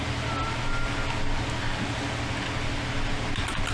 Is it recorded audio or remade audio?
recorded